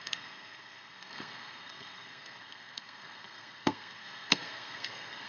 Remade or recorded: remade